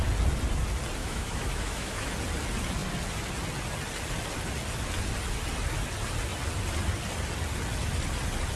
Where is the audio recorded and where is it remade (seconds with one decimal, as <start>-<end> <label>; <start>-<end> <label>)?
0.0-1.0 recorded; 1.0-2.1 remade; 2.1-8.6 recorded